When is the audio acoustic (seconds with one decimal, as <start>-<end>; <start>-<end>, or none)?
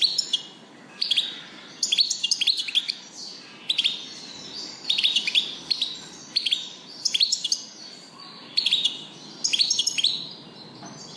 3.5-4.3; 8.4-9.6